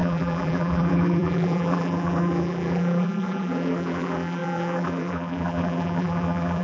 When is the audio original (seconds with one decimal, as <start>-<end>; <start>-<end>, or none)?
none